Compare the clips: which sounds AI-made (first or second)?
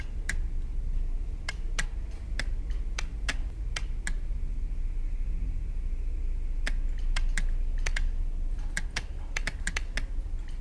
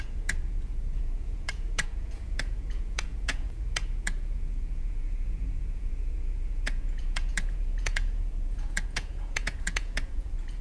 second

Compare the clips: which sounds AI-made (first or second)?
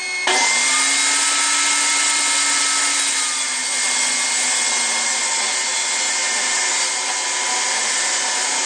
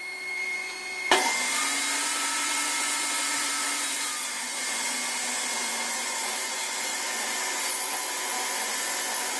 second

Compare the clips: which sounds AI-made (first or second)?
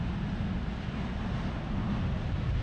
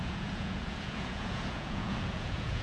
second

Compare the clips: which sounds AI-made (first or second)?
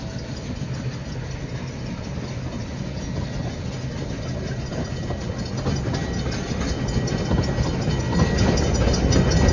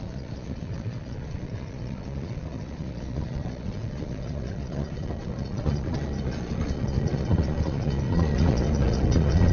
second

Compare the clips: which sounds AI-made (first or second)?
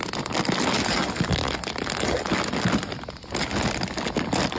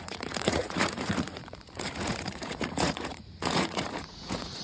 second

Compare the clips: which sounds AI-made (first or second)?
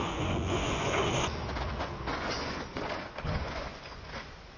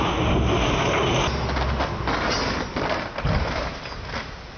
first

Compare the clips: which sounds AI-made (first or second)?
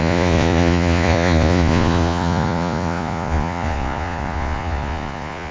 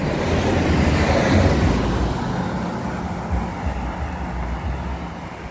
first